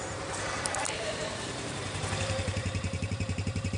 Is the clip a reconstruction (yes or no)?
yes